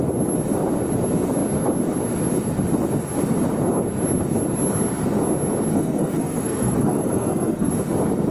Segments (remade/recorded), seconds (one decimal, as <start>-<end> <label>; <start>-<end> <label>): 0.0-5.7 recorded; 5.7-7.7 remade; 7.7-8.3 recorded